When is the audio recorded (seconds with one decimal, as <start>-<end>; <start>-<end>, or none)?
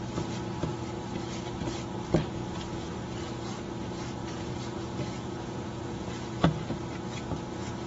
0.0-4.2; 6.1-7.9